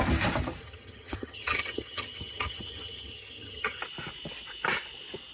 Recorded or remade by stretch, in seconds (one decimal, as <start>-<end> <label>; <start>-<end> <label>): 0.0-0.6 recorded; 0.6-3.8 remade; 3.8-5.3 recorded